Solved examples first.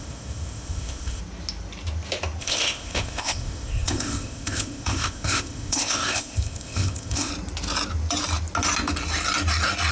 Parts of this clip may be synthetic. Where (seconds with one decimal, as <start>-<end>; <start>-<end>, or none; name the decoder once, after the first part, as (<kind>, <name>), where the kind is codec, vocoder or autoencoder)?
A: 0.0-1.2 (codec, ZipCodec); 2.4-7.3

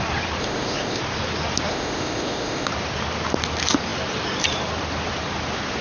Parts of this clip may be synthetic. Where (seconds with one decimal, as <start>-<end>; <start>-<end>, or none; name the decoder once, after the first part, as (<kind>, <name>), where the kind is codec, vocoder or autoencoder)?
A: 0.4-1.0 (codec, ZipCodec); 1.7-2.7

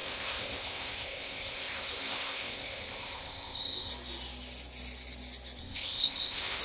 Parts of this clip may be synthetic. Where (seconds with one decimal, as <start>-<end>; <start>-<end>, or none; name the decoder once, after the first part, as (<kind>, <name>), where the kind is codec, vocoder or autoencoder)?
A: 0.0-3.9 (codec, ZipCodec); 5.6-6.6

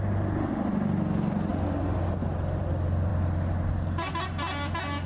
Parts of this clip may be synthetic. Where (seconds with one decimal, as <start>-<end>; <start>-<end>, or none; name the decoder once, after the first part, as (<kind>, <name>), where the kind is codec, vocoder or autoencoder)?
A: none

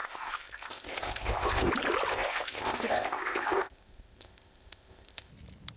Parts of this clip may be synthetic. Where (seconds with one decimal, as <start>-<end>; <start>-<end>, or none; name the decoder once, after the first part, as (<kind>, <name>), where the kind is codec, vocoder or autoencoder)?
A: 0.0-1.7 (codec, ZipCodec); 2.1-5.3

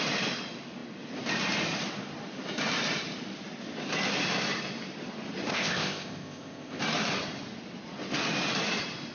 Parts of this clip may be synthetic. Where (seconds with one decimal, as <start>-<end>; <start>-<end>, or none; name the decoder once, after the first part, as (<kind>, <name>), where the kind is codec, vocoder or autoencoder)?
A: 5.5-6.8 (codec, ZipCodec)

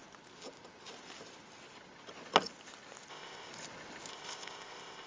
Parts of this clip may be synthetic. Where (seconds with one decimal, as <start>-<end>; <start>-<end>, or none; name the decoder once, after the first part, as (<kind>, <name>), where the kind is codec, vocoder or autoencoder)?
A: 3.1-3.5 (codec, ZipCodec); 4.1-5.1

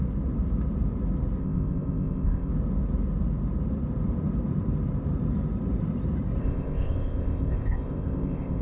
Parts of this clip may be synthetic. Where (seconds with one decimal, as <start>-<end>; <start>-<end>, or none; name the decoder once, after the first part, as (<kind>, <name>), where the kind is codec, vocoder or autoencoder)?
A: 1.4-2.5 (codec, ZipCodec); 6.4-8.6